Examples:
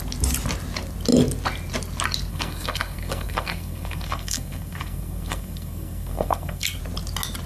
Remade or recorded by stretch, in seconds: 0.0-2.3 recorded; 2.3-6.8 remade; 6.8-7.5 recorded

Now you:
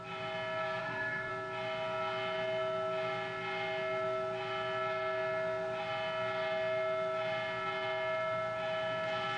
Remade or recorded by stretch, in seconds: 0.0-0.8 recorded; 0.8-1.3 remade; 1.3-9.4 recorded

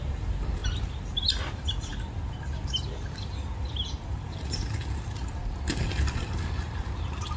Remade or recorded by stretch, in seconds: 0.0-7.4 recorded

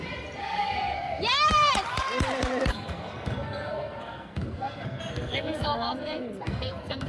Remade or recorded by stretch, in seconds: 0.0-0.4 recorded; 0.4-1.2 remade; 1.2-2.7 recorded; 2.7-7.1 remade

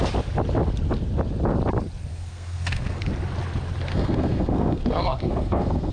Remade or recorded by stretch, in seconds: 0.0-2.1 recorded; 2.1-3.0 remade; 3.0-3.9 recorded; 3.9-5.9 remade

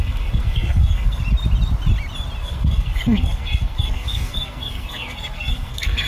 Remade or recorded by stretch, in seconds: 0.0-1.2 remade; 1.2-2.4 recorded; 2.4-6.1 remade